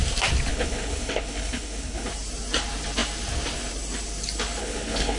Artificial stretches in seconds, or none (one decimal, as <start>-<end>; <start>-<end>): 0.5-2.1; 4.6-5.2